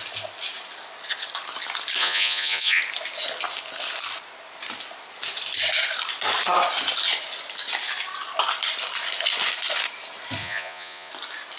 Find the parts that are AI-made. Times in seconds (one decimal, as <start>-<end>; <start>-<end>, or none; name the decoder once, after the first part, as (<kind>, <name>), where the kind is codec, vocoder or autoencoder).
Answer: 2.0-2.8 (vocoder, Vocos); 10.4-11.1